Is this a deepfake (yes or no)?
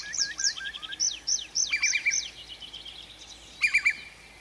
yes